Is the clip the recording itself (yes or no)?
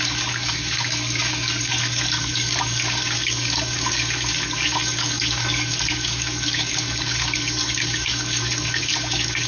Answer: no